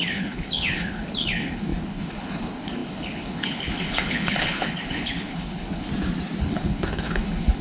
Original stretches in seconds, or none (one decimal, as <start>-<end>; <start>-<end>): 5.9-6.4